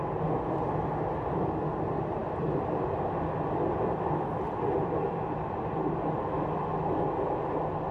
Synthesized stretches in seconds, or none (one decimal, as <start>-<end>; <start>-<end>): 2.2-5.7